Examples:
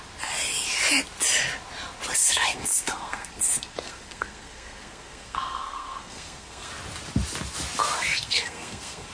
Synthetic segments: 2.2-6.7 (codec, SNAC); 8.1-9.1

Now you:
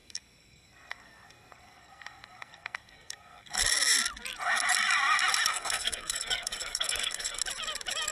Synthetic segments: 0.0-3.6 (codec, SNAC); 5.5-7.4

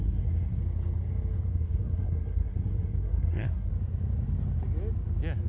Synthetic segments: 0.0-0.6 (codec, SNAC); 1.5-3.7

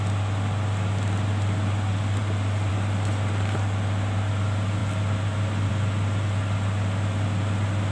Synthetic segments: none

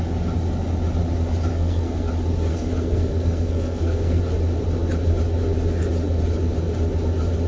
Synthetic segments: 1.5-2.1 (codec, SNAC); 2.5-4.2

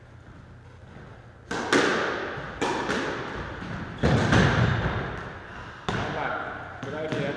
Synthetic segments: none

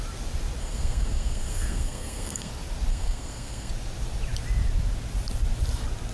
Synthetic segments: 0.6-2.5 (codec, SNAC); 2.9-3.7